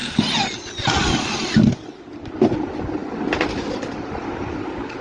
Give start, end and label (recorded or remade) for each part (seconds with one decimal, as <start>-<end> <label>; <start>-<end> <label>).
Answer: 0.0-5.0 recorded